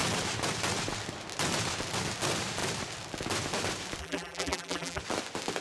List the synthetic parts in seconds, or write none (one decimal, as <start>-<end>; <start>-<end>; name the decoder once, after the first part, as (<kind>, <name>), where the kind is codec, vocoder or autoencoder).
4.0-5.0 (vocoder, BigVGAN v2)